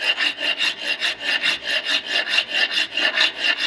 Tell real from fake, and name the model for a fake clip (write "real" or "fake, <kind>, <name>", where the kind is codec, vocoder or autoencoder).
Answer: real